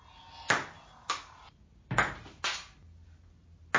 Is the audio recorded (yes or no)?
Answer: yes